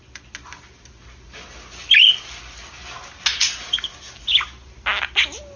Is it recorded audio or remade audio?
recorded